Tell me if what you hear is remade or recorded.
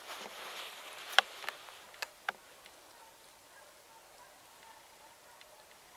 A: recorded